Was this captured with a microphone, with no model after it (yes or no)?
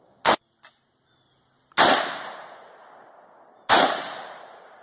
yes